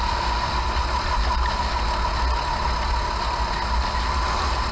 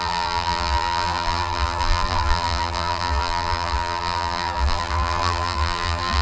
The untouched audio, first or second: first